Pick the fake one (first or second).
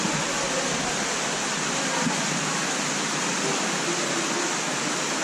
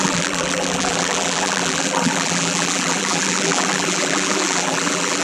second